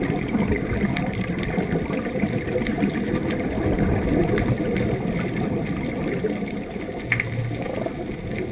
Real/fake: real